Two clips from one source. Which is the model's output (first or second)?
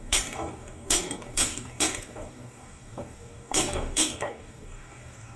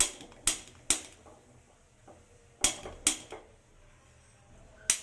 first